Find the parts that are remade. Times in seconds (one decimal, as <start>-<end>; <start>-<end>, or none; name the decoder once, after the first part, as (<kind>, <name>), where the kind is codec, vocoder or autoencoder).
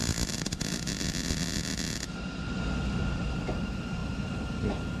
2.6-5.0 (vocoder, BigVGAN v2)